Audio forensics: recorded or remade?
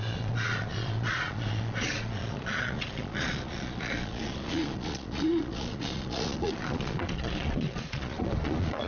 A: remade